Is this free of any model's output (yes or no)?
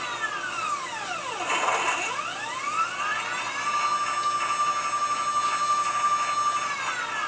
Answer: yes